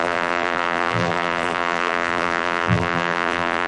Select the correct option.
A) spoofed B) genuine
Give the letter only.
A